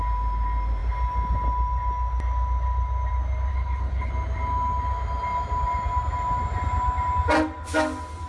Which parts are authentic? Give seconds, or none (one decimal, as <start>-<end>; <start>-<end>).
0.0-3.5; 4.1-8.3